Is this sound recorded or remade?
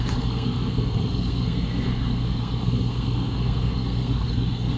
remade